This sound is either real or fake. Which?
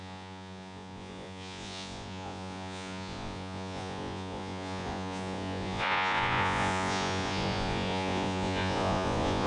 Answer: fake